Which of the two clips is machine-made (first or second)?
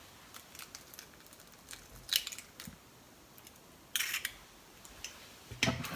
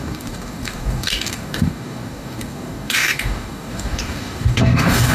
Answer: second